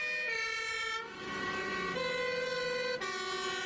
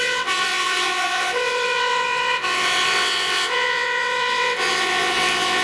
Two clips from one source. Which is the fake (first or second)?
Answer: second